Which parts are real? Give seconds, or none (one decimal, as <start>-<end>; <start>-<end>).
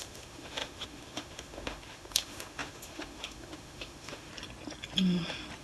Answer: 4.3-5.6